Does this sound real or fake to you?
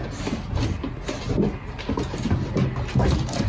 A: real